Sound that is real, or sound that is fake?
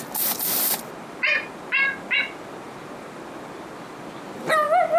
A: real